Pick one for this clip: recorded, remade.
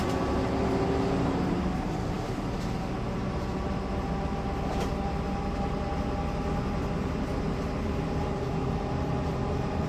recorded